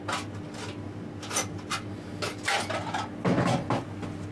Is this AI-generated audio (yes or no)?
no